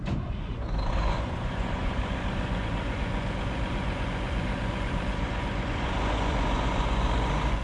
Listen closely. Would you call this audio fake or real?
fake